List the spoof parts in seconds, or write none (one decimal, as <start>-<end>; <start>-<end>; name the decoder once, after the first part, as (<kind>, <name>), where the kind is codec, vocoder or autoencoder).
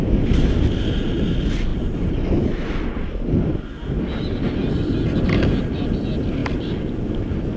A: none